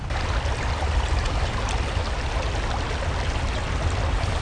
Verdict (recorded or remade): recorded